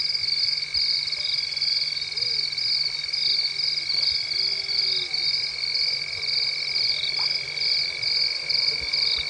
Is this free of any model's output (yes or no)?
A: yes